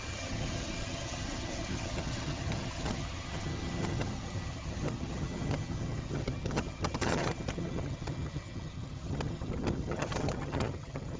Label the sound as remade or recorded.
remade